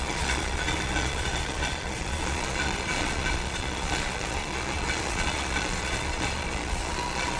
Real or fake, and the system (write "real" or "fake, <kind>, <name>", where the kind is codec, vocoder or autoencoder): fake, vocoder, Vocos